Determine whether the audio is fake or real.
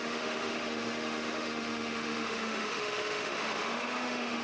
fake